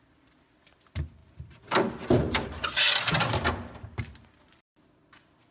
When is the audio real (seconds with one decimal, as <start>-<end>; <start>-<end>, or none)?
0.0-5.5